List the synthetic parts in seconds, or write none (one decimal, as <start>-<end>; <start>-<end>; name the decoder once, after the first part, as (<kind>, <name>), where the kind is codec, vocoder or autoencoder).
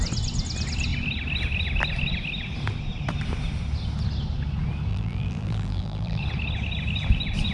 4.9-6.2 (vocoder, BigVGAN v2)